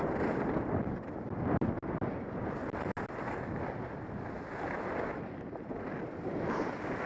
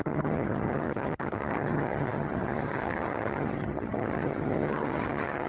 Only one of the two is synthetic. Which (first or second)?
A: second